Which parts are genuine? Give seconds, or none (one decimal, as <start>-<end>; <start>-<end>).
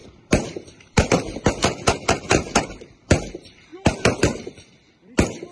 3.7-4.2